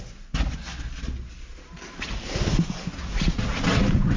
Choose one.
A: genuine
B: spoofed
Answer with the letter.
A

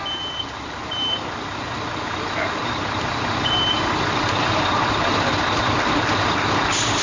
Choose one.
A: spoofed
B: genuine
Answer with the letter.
B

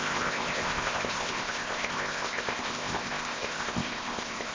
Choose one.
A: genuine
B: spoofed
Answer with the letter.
B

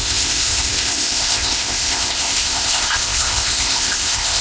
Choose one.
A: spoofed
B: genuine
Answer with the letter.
A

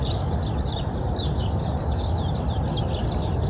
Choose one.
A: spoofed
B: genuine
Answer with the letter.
B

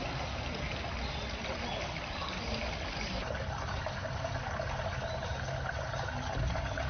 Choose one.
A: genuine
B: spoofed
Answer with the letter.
A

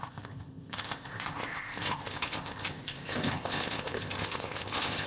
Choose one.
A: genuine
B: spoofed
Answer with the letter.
B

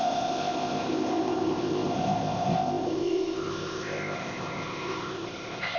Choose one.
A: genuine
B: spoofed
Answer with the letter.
B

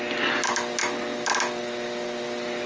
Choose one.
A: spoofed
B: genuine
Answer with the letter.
B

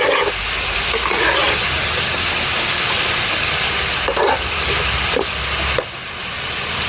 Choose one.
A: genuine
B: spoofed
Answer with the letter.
A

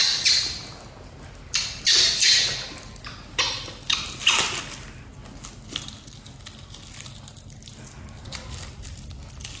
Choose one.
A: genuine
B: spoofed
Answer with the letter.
A